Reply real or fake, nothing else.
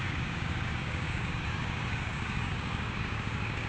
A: fake